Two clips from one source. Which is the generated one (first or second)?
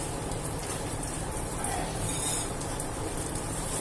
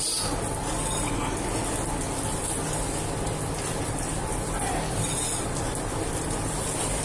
first